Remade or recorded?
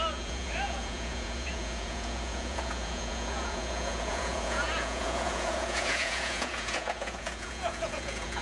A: remade